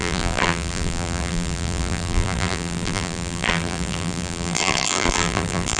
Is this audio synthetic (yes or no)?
yes